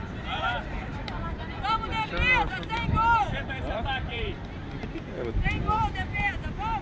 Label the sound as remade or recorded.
remade